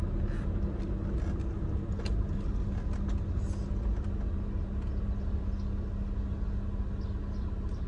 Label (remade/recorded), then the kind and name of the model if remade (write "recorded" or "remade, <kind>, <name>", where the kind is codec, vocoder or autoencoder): recorded